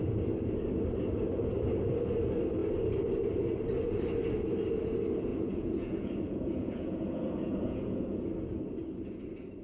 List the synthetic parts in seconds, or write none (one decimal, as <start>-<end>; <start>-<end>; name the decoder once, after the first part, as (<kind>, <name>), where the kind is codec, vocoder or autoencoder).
5.3-8.2 (vocoder, Vocos)